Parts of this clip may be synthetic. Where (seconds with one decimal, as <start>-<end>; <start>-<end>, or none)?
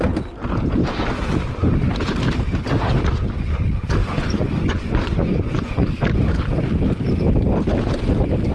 4.0-5.9